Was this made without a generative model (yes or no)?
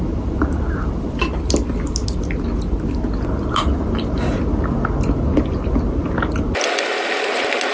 yes